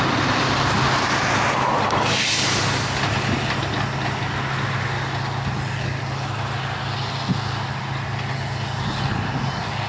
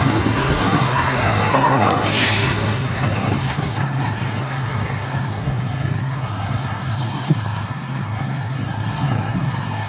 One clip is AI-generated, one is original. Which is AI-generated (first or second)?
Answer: second